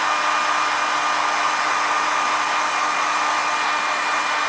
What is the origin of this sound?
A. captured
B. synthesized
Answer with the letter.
A